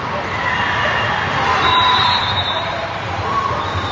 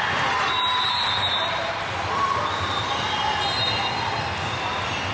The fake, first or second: first